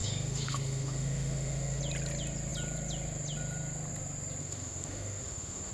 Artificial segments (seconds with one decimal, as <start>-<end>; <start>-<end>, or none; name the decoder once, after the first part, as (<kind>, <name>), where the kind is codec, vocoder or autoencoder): 0.0-1.8 (autoencoder, DAC-VAE); 4.4-5.7